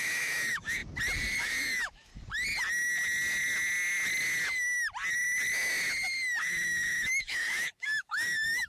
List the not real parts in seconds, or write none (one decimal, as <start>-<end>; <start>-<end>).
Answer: 0.0-0.8; 1.4-2.1; 6.4-8.7